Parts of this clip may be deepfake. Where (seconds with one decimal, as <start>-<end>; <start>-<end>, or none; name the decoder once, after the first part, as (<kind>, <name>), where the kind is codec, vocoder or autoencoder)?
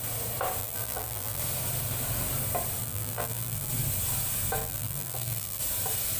0.6-1.4 (vocoder, BigVGAN v2); 2.8-3.7; 4.6-5.6